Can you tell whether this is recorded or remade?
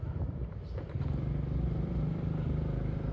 remade